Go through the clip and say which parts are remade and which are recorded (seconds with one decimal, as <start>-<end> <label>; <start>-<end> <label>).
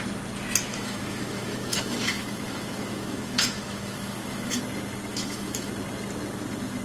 0.0-0.7 recorded; 0.7-4.6 remade; 4.6-5.1 recorded; 5.1-5.7 remade; 5.7-6.8 recorded